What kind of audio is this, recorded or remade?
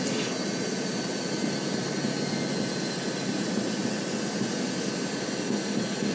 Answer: recorded